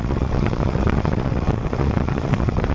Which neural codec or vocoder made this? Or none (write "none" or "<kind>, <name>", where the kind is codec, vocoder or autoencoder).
vocoder, WaveNeXt